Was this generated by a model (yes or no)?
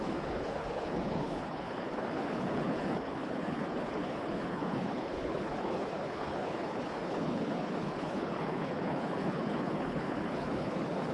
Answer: yes